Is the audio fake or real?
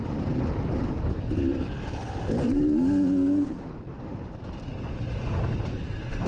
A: real